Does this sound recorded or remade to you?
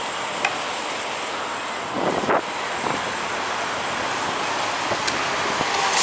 recorded